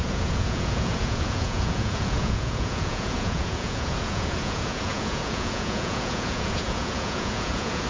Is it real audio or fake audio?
fake